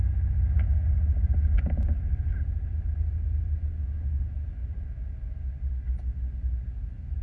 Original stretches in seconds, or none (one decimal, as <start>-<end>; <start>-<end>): 0.0-4.6; 5.7-7.2

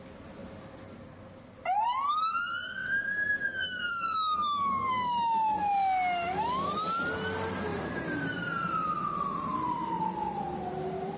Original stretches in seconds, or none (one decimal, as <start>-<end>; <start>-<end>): 0.0-2.8; 4.9-7.7; 10.4-11.2

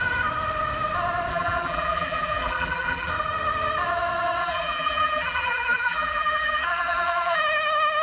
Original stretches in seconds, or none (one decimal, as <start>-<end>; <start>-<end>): 0.0-1.3; 3.1-4.4; 7.4-8.0